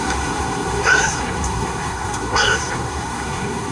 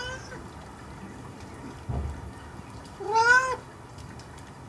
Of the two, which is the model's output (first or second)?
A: first